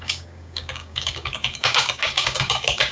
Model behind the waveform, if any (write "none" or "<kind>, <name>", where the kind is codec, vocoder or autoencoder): codec, DAC